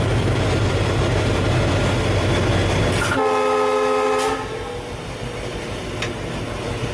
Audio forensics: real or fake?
real